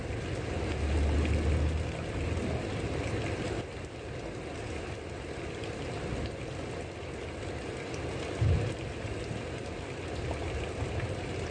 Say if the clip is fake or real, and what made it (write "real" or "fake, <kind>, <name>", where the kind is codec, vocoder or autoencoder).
real